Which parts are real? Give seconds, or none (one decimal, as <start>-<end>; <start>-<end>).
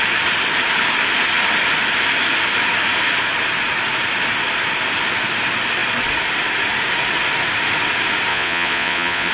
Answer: 0.0-8.3